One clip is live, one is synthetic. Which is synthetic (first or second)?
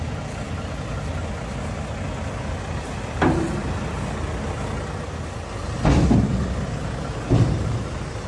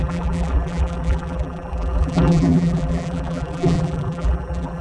second